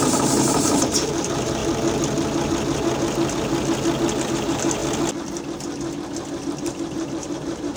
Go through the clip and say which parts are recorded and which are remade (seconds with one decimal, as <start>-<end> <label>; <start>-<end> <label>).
0.0-1.6 remade; 1.6-4.3 recorded; 4.3-4.8 remade; 4.8-6.4 recorded; 6.4-7.8 remade